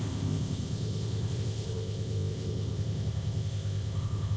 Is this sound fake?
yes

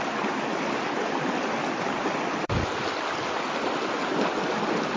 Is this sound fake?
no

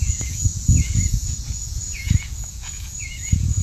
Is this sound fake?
yes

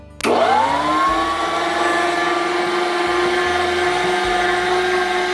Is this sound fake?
no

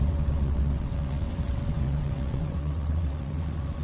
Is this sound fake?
yes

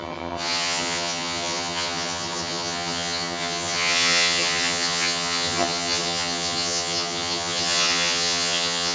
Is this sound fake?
yes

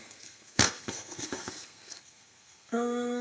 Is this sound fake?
yes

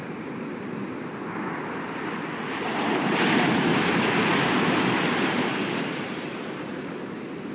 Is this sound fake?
yes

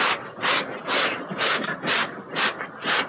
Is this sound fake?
no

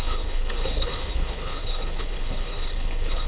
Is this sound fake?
yes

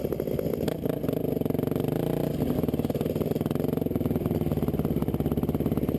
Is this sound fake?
no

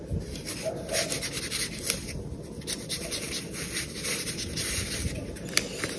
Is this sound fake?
no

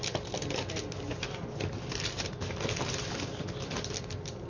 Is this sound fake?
no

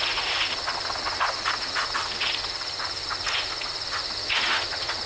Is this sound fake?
yes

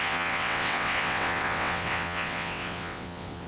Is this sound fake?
yes